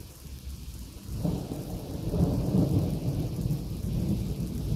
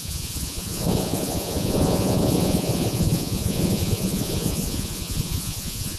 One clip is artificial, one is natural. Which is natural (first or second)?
first